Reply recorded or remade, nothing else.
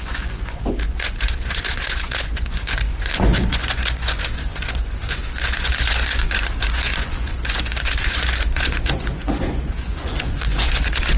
remade